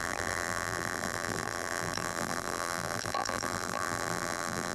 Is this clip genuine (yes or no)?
no